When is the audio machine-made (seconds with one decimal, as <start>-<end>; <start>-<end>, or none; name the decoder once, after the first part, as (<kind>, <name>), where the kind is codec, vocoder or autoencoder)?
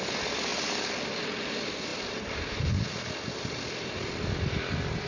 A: none